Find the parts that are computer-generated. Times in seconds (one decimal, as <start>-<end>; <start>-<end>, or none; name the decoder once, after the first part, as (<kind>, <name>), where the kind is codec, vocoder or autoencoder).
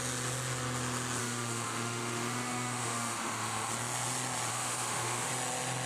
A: 1.2-3.7 (autoencoder, DAC-VAE); 4.5-5.3